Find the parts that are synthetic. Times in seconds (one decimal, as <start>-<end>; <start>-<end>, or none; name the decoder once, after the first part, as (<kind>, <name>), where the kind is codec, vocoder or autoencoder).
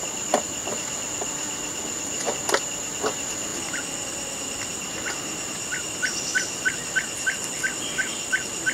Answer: none